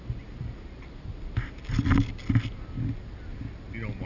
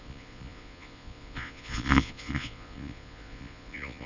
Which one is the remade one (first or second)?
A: second